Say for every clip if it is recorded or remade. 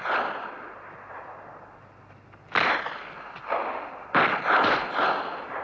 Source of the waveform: recorded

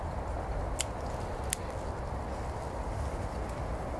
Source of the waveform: recorded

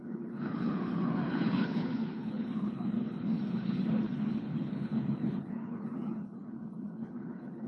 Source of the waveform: remade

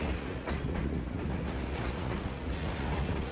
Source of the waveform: remade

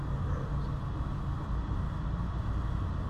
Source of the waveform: recorded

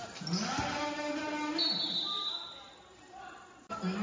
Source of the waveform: recorded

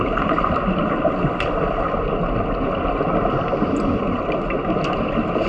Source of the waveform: recorded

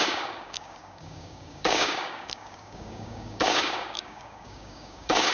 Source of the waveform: remade